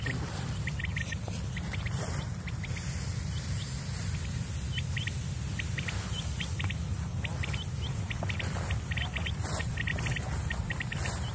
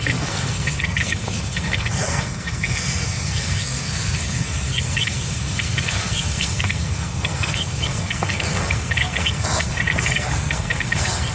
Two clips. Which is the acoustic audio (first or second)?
first